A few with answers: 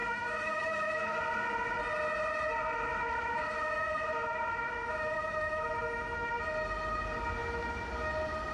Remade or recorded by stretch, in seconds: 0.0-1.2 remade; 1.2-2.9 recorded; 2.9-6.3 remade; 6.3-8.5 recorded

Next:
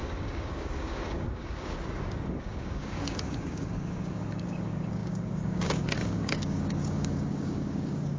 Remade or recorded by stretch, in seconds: 0.0-8.2 remade

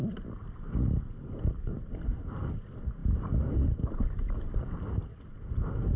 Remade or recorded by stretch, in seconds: 0.0-6.0 recorded

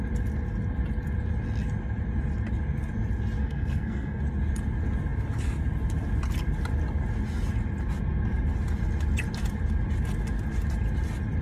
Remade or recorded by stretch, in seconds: 0.0-3.4 recorded; 3.4-4.2 remade; 4.2-11.4 recorded

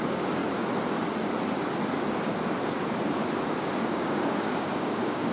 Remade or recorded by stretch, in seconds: 0.0-0.4 remade; 0.4-3.5 recorded; 3.5-5.3 remade

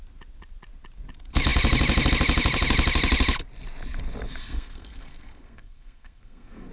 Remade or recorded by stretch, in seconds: 0.0-4.4 recorded; 4.4-6.7 remade

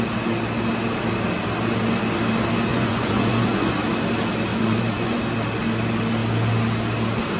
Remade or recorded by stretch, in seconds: 0.0-2.7 recorded; 2.7-3.7 remade; 3.7-4.5 recorded; 4.5-5.2 remade; 5.2-7.4 recorded

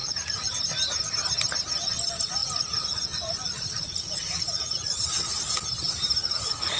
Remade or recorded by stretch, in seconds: 0.0-0.5 remade; 0.5-2.4 recorded; 2.4-5.0 remade; 5.0-6.2 recorded; 6.2-6.8 remade